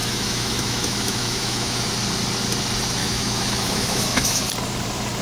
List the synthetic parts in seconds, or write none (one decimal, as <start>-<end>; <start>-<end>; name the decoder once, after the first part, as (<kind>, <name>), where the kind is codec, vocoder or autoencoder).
0.0-1.9 (autoencoder, DAC-VAE); 3.0-4.4